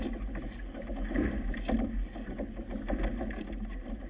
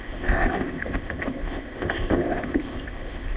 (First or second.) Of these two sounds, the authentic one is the first